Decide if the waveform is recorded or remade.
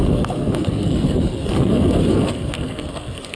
remade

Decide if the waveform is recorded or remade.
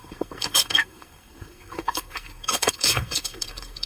remade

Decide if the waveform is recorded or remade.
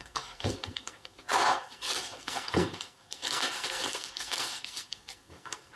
remade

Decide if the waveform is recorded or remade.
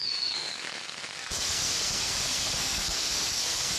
remade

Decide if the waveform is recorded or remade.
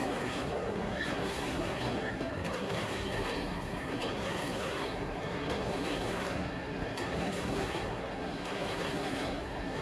remade